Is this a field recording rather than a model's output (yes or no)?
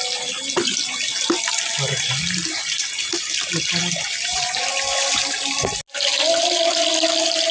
yes